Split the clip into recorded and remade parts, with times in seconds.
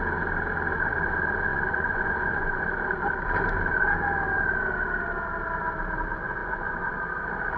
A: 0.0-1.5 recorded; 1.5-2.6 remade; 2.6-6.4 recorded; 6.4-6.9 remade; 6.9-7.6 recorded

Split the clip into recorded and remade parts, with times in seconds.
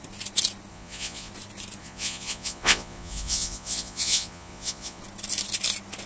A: 0.0-0.7 recorded; 0.7-1.3 remade; 1.3-1.8 recorded; 1.8-5.0 remade; 5.0-6.1 recorded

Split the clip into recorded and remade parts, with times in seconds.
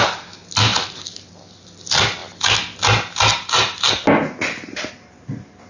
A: 0.0-5.7 recorded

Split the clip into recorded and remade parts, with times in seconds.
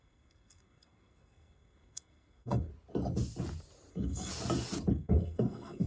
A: 0.0-2.7 remade; 2.7-3.9 recorded; 3.9-4.3 remade; 4.3-4.9 recorded; 4.9-5.9 remade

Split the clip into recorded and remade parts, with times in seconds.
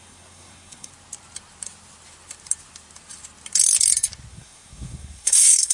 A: 0.0-0.9 remade; 0.9-4.3 recorded; 4.3-5.7 remade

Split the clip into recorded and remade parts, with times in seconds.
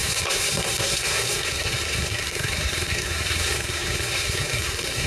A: 0.0-5.1 remade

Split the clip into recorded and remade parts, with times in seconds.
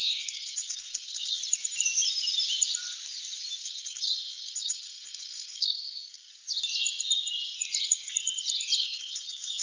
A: 0.0-1.4 remade; 1.4-3.6 recorded; 3.6-6.3 remade; 6.3-8.8 recorded; 8.8-9.6 remade